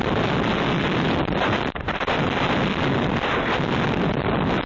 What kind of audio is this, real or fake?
real